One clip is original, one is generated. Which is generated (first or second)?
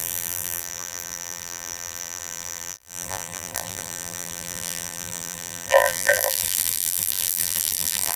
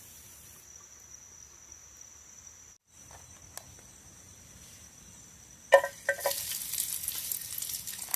first